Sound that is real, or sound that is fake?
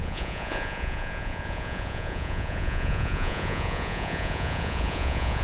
fake